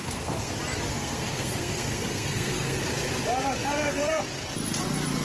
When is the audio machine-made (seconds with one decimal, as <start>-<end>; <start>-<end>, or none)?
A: 0.0-0.5; 0.9-2.8; 3.6-4.2